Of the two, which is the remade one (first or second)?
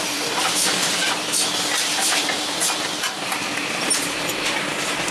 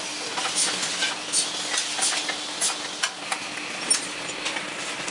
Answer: first